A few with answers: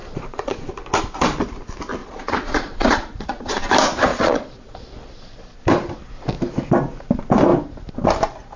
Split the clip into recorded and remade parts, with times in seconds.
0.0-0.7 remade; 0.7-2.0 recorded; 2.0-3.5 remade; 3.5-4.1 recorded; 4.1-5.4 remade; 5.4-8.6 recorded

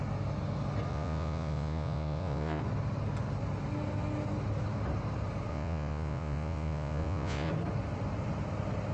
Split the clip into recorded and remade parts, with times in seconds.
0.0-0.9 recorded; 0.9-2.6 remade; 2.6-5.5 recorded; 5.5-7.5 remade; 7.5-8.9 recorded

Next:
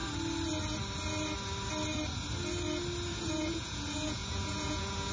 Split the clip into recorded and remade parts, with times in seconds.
0.0-3.1 recorded; 3.1-5.1 remade

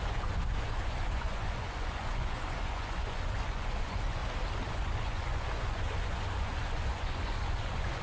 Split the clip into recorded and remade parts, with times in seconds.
0.0-4.2 remade; 4.2-4.7 recorded; 4.7-8.0 remade